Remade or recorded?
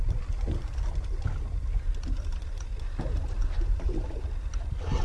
recorded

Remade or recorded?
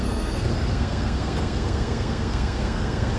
remade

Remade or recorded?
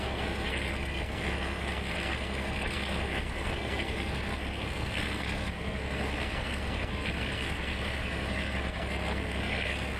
remade